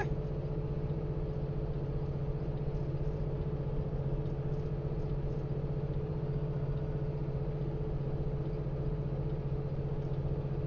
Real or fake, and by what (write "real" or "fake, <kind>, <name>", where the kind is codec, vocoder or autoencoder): real